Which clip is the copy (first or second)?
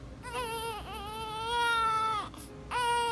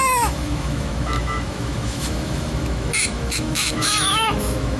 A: second